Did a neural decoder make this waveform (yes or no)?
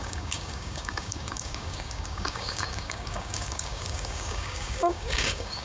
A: yes